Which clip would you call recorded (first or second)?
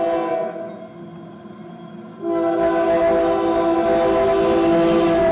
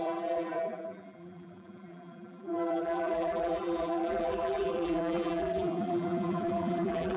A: first